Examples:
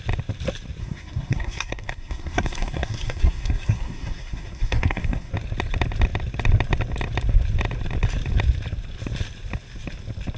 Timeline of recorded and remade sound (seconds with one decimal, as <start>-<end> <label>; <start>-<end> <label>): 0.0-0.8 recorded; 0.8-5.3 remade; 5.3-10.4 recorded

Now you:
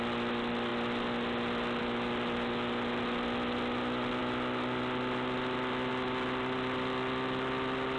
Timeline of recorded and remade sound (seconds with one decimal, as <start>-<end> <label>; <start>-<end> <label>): 0.0-8.0 recorded

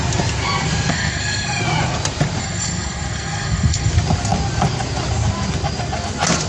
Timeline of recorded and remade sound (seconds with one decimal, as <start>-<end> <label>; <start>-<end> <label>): 0.0-0.9 recorded; 0.9-1.6 remade; 1.6-2.4 recorded; 2.4-3.9 remade; 3.9-6.5 recorded

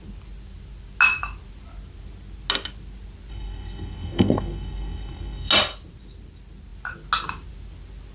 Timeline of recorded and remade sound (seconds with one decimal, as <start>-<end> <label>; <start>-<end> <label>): 0.0-3.3 recorded; 3.3-5.5 remade; 5.5-8.1 recorded

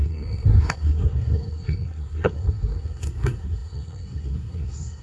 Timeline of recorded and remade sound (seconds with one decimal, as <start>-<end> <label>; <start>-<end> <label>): 0.0-5.0 remade

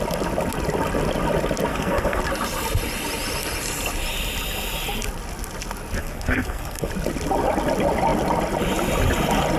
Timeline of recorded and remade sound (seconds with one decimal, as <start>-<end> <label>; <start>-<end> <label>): 0.0-1.7 recorded; 1.7-2.2 remade; 2.2-6.0 recorded; 6.0-6.9 remade; 6.9-9.6 recorded

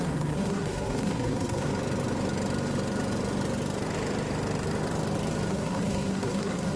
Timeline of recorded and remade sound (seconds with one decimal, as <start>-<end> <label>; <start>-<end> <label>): 0.0-1.7 remade; 1.7-5.5 recorded; 5.5-6.8 remade